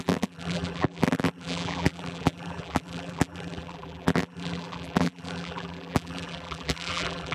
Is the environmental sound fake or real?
fake